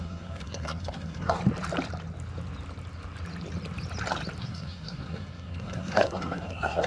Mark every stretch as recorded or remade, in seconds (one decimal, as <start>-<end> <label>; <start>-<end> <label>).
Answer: 0.0-1.4 remade; 1.4-4.4 recorded; 4.4-6.9 remade